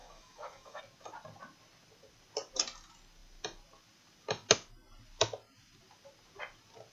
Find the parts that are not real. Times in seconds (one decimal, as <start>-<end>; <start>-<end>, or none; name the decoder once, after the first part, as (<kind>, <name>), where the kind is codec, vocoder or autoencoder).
0.0-0.8 (autoencoder, DAC-VAE)